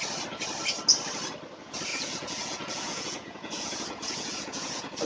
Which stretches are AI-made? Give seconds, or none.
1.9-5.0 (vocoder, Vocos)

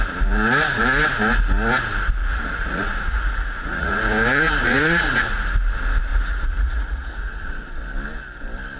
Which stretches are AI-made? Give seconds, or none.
2.2-4.0 (vocoder, Vocos); 4.6-5.4; 6.1-7.8